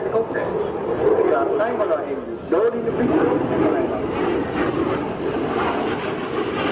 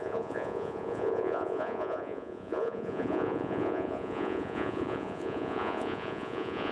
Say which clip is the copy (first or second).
second